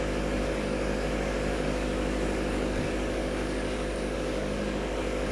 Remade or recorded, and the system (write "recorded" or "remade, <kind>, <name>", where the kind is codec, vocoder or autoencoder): remade, codec, DAC